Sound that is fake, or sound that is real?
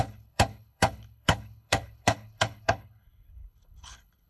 fake